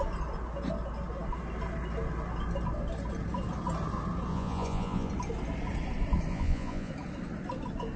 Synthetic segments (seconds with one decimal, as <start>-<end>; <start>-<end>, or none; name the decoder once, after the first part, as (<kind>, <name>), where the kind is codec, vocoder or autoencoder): 4.3-5.1 (vocoder, Vocos); 6.3-6.9